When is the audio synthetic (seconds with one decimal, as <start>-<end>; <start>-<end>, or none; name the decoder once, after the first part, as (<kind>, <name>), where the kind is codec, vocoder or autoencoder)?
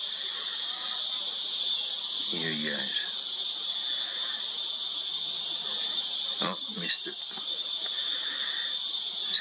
0.0-1.7 (vocoder, BigVGAN v2); 5.5-8.0; 8.8-9.4